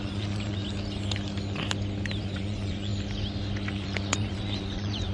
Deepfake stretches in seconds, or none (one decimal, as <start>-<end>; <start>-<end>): 0.0-0.6; 2.2-2.9; 3.7-5.1